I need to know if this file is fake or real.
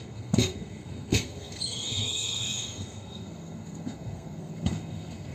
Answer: fake